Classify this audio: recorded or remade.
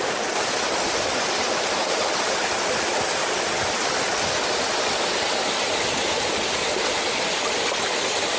recorded